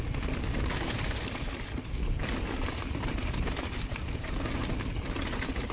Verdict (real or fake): real